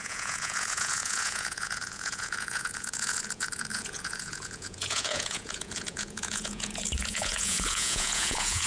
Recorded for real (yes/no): no